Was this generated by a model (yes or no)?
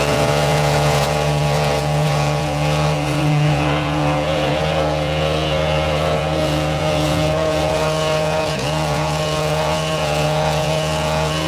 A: yes